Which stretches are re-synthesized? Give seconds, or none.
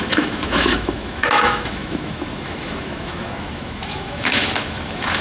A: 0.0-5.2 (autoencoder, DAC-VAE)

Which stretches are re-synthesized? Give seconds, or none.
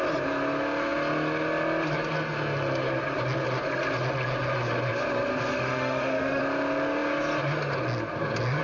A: 5.5-6.4 (autoencoder, DAC-VAE)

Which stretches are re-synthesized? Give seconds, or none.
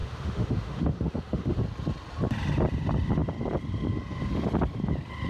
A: 0.0-1.6 (autoencoder, DAC-VAE)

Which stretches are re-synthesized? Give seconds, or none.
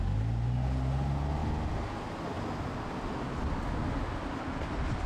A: none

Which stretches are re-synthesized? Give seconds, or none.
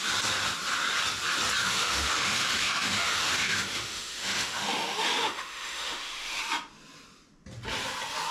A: 1.6-6.4 (autoencoder, DAC-VAE)